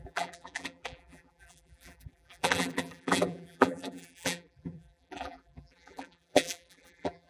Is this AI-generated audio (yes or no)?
yes